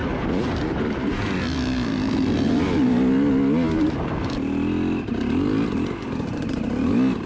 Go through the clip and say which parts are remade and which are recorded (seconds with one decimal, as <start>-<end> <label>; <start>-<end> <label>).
0.0-7.3 recorded

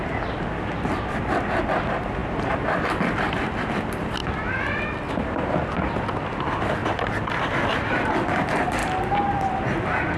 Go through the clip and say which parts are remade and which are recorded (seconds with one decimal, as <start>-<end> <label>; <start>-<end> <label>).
0.0-10.2 recorded

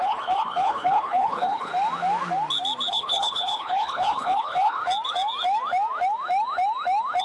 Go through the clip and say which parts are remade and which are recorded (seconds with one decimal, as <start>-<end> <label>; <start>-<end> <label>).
0.0-1.7 remade; 1.7-2.9 recorded; 2.9-4.8 remade; 4.8-7.2 recorded